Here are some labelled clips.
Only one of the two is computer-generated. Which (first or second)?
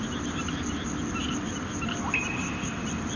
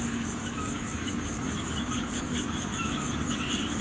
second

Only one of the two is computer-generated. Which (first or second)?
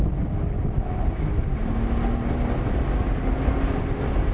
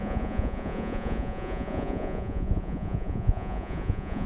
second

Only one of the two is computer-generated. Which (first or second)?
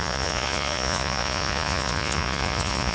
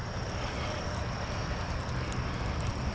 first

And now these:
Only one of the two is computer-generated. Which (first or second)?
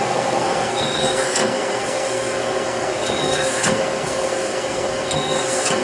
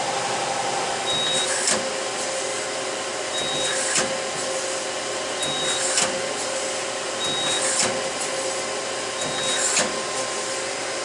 first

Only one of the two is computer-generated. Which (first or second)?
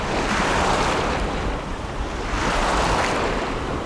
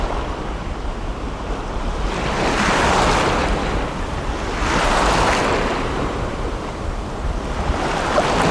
first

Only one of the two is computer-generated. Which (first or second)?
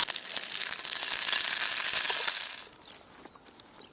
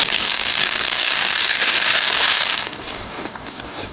second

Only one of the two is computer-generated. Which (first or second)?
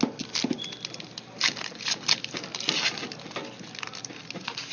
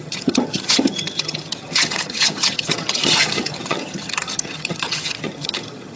second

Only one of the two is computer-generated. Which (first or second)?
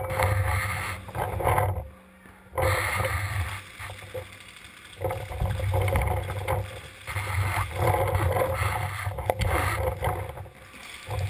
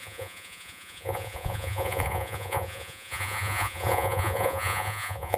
second